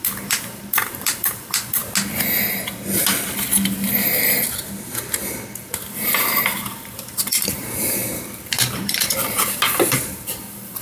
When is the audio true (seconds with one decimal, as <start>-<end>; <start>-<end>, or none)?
1.8-5.9; 8.0-8.8

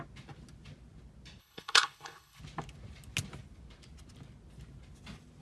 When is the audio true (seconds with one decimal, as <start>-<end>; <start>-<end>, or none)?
0.0-1.4; 2.4-5.4

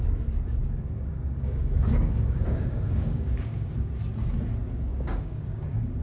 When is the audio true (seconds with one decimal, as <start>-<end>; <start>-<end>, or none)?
0.0-0.6; 3.9-4.9

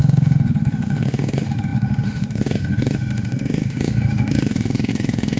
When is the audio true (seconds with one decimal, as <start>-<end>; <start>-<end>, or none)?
none

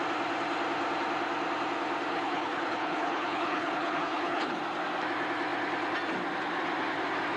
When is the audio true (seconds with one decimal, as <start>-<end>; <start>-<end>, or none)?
0.0-2.1; 4.6-7.4

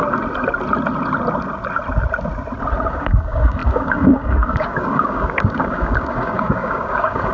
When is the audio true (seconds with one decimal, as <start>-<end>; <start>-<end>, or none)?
0.0-2.9